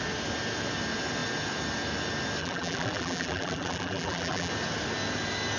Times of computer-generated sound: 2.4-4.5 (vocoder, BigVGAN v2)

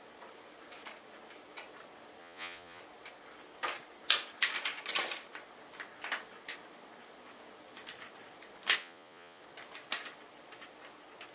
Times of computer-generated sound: 2.2-2.8 (vocoder, Vocos); 8.8-9.4

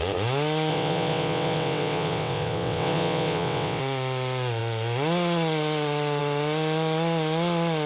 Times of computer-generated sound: 0.7-3.8 (vocoder, WaveNeXt)

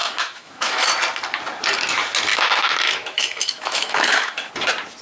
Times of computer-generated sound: 0.0-0.9 (autoencoder, DAC-VAE); 2.3-4.5

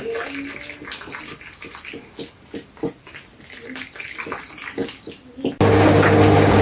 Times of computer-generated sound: none

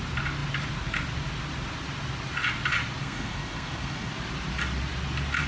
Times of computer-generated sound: 3.0-4.1 (codec, SNAC)

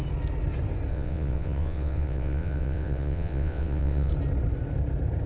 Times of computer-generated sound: 0.9-4.1 (vocoder, WaveNeXt)

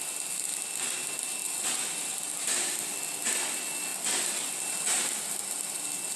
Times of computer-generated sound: none